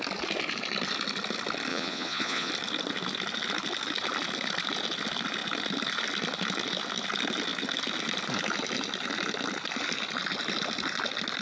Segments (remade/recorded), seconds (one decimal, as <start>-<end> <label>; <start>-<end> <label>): 0.0-1.7 recorded; 1.7-2.5 remade; 2.5-11.4 recorded